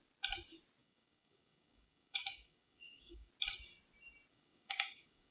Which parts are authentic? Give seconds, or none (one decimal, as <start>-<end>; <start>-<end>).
0.0-0.8; 3.3-4.3